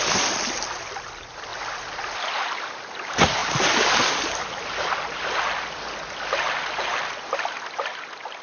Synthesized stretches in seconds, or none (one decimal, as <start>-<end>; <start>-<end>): none